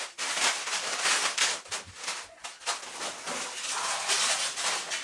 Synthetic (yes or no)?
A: no